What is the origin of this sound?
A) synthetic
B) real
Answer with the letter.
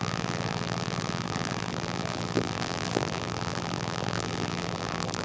A